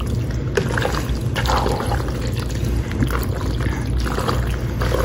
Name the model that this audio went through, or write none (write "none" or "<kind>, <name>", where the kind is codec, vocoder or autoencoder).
none